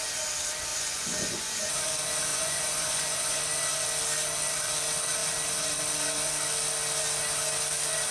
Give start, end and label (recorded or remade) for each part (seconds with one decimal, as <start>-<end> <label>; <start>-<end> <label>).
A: 0.0-0.7 recorded; 0.7-1.7 remade; 1.7-2.3 recorded; 2.3-3.4 remade; 3.4-8.1 recorded